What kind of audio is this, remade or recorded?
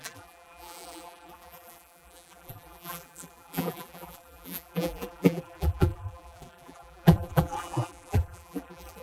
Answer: remade